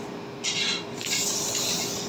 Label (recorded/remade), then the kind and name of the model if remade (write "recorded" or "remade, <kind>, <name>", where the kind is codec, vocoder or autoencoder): recorded